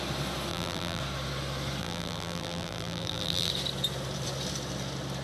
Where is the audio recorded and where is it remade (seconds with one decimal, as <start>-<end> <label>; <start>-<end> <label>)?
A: 0.0-0.5 recorded; 0.5-1.0 remade; 1.0-1.8 recorded; 1.8-3.5 remade; 3.5-5.2 recorded